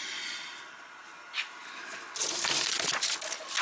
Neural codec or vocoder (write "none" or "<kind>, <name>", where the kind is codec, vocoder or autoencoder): none